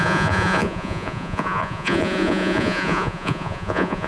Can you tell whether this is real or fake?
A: fake